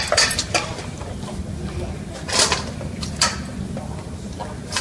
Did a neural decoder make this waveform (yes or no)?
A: no